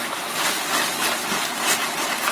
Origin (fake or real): real